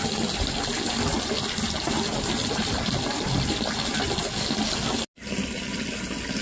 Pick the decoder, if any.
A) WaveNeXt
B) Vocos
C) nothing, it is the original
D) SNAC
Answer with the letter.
C